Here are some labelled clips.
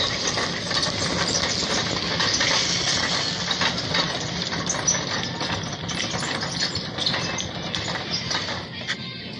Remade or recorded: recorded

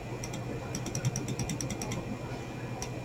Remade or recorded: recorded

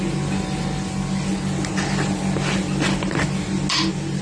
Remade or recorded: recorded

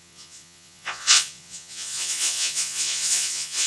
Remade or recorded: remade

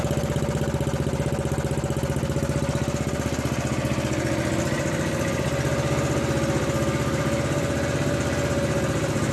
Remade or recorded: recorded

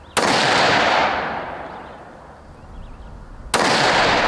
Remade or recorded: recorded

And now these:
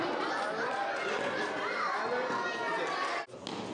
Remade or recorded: recorded